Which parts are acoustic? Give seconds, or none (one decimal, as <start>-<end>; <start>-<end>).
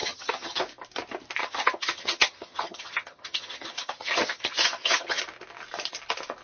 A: 0.6-1.4; 5.2-6.4